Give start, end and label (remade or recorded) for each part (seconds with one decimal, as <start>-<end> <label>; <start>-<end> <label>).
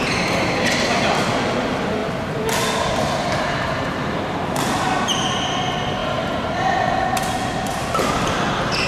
0.0-8.9 recorded